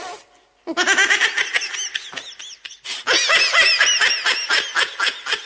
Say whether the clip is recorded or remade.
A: recorded